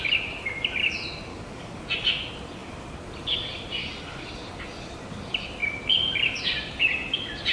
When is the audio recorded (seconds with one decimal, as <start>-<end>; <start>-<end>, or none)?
0.0-1.3; 1.8-7.5